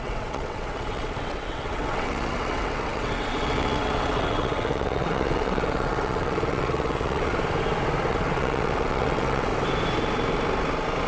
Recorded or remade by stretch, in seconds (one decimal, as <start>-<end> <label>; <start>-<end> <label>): 0.0-7.3 remade; 7.3-8.1 recorded; 8.1-9.5 remade; 9.5-11.1 recorded